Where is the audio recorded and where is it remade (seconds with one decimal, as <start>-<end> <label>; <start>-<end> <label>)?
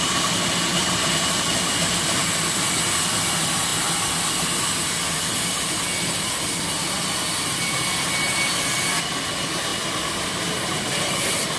0.0-11.6 recorded